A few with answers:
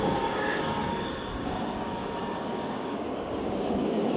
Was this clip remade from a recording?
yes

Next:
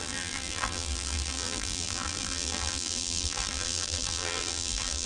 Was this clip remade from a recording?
yes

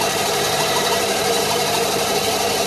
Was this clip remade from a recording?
yes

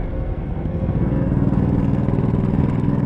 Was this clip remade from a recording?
yes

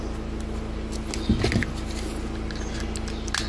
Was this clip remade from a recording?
no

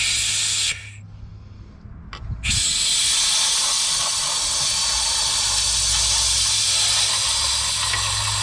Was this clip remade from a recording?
no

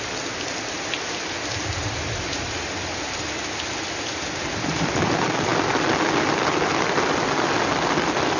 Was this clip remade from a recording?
no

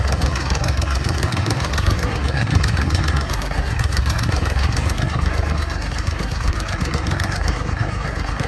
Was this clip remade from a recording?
yes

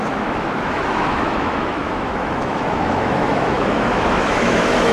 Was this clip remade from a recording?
yes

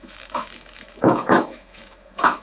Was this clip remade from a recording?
yes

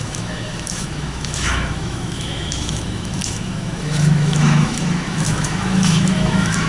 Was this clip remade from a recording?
yes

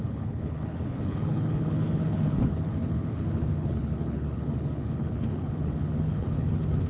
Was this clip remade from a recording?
yes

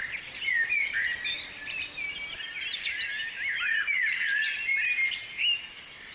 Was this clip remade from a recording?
no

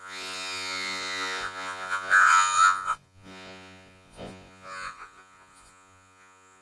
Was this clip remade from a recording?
yes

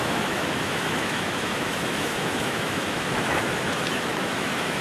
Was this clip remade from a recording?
yes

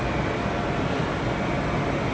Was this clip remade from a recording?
no